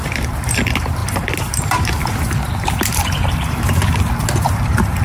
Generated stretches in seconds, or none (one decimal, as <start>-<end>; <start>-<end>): 0.0-3.8; 4.5-5.0